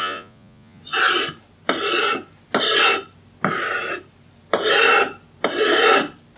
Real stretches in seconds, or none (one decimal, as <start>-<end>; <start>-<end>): 0.8-6.4